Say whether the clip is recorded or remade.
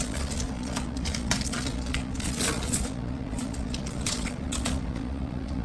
remade